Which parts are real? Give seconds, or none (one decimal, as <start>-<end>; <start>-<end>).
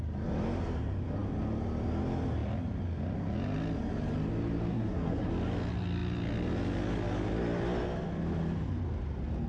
0.0-4.7; 5.3-9.5